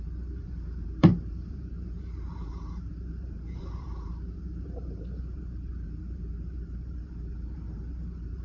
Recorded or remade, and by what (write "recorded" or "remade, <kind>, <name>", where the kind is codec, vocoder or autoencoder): remade, vocoder, BigVGAN v2